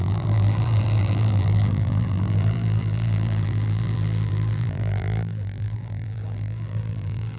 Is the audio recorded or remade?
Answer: remade